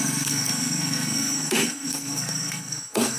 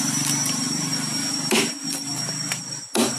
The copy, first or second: first